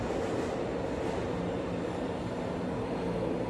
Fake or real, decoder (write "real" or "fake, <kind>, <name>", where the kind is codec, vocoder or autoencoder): real